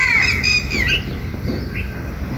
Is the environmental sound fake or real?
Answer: real